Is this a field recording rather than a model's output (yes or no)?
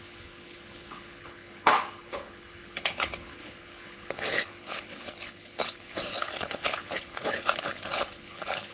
no